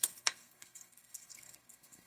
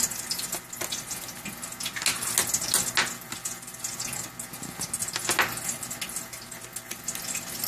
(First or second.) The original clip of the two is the second